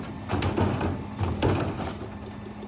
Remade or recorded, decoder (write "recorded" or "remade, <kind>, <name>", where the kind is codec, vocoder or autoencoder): recorded